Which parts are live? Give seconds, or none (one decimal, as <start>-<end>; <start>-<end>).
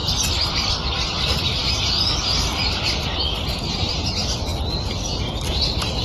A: 0.0-6.0